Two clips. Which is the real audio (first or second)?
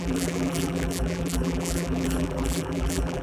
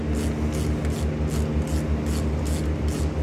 second